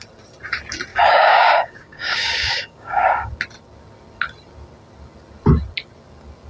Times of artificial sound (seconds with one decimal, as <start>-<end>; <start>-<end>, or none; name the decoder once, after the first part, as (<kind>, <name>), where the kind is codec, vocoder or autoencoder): 0.9-3.3 (codec, DAC)